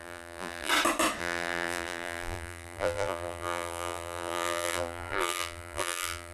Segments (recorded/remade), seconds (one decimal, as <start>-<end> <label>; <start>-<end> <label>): 0.0-0.7 remade; 0.7-1.2 recorded; 1.2-6.3 remade